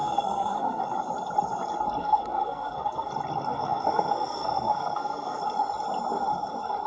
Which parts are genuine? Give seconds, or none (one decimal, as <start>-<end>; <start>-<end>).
0.8-2.0; 3.1-3.5; 5.4-6.9